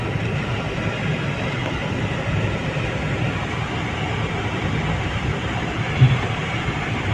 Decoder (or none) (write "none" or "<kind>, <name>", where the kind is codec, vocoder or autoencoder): none